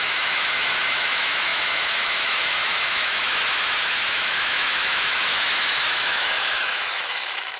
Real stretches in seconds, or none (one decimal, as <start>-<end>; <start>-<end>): none